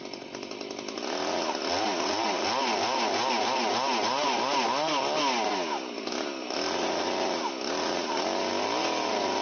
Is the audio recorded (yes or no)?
yes